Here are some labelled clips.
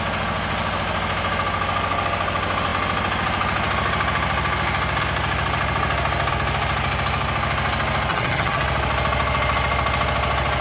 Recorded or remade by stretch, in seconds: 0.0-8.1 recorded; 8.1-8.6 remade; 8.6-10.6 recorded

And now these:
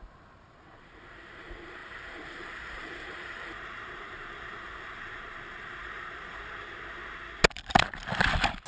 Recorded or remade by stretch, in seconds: 0.0-1.8 recorded; 1.8-6.4 remade; 6.4-8.7 recorded

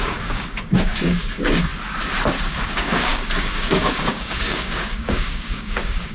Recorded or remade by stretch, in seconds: 0.0-1.7 remade; 1.7-2.4 recorded; 2.4-6.1 remade

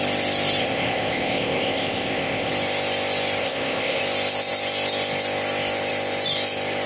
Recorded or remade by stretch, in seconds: 0.0-0.6 recorded; 0.6-2.5 remade; 2.5-3.4 recorded; 3.4-4.0 remade; 4.0-6.9 recorded

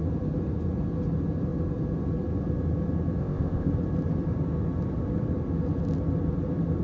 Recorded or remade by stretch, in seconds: 0.0-3.2 recorded; 3.2-3.7 remade; 3.7-6.8 recorded

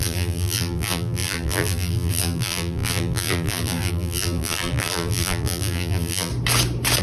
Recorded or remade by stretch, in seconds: 0.0-6.3 remade; 6.3-7.0 recorded